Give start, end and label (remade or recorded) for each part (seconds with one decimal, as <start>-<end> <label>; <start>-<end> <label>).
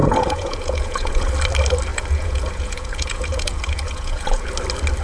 0.0-1.3 remade; 1.3-1.9 recorded; 1.9-4.5 remade; 4.5-5.0 recorded